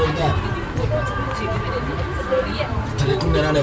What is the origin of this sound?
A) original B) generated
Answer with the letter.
A